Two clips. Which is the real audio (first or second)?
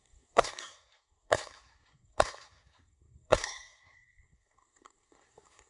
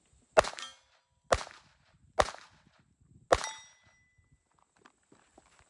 second